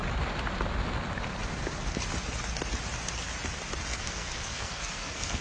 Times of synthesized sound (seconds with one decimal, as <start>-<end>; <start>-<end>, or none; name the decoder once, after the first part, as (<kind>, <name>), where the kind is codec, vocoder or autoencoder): 3.9-5.4 (codec, SNAC)